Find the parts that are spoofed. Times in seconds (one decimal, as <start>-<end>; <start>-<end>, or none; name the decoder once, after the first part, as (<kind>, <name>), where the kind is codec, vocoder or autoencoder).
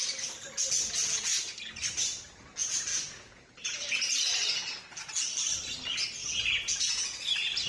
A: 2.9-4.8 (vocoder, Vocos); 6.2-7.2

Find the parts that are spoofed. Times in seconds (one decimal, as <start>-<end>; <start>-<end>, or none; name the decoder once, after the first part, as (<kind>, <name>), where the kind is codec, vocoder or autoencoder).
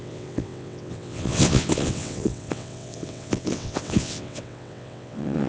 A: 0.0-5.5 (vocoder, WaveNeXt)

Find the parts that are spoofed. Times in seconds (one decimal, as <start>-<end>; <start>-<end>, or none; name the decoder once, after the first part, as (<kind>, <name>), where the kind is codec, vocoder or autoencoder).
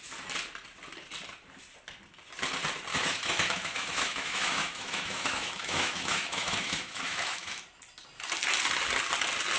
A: 2.9-7.6 (autoencoder, DAC-VAE)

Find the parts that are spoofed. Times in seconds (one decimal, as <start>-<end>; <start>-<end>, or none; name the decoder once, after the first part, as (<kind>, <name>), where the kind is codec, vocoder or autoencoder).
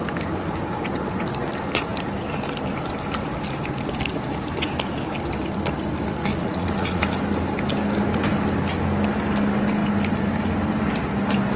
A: 6.3-7.0 (vocoder, Vocos)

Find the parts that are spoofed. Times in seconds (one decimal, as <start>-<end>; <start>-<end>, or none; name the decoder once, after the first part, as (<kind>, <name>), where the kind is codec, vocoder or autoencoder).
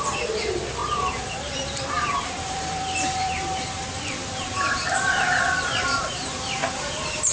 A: 0.0-7.3 (vocoder, BigVGAN v2)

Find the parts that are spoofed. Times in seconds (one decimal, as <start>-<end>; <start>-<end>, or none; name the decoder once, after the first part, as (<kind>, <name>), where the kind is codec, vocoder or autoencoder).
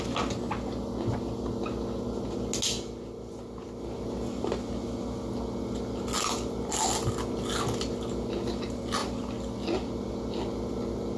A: none